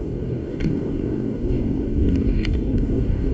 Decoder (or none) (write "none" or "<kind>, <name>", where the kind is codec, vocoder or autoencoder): codec, DAC